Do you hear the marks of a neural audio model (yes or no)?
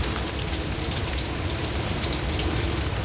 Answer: no